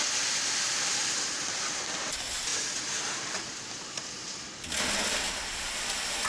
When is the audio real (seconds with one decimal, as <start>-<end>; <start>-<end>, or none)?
0.0-6.3